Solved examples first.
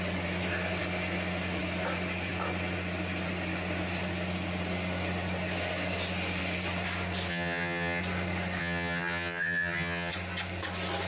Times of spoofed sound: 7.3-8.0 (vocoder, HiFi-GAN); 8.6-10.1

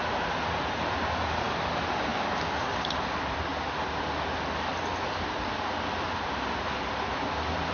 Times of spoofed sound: none

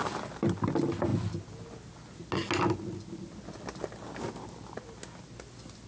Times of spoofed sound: none

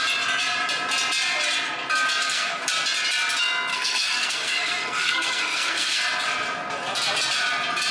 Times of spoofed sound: 2.2-2.7 (codec, SNAC); 3.7-6.0

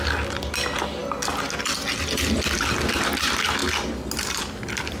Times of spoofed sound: none